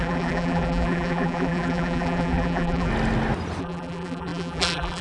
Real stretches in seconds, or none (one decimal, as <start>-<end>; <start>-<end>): 2.9-3.6